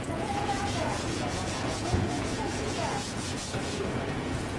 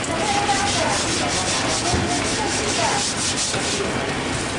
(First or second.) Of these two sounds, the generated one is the first